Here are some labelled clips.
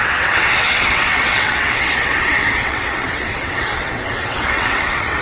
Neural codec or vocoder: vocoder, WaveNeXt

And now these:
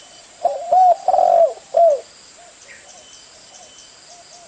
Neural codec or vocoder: none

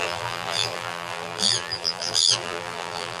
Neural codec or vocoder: vocoder, BigVGAN v2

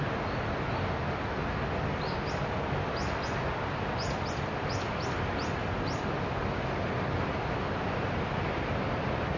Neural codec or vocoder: none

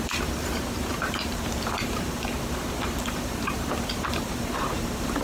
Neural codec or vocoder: vocoder, BigVGAN v2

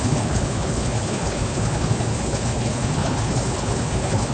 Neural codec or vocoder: codec, HILCodec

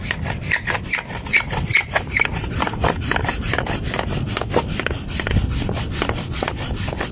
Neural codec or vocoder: none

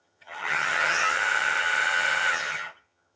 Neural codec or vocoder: vocoder, HiFi-GAN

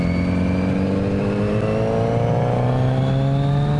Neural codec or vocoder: none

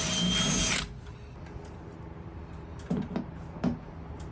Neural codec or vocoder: none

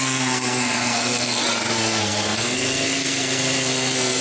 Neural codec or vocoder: codec, SNAC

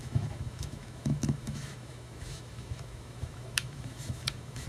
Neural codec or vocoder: autoencoder, DAC-VAE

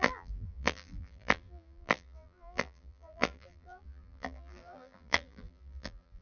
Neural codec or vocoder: vocoder, BigVGAN v2